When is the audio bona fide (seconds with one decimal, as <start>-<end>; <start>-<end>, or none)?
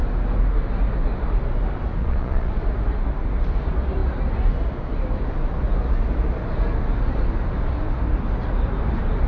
0.0-2.0; 2.5-9.3